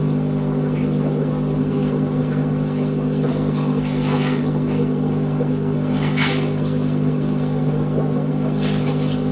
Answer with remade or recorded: remade